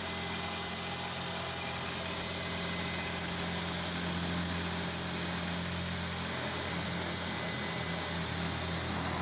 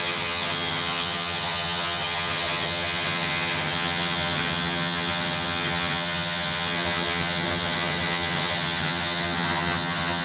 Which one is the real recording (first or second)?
first